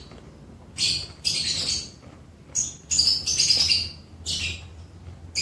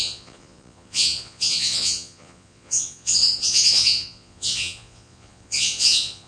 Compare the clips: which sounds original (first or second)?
first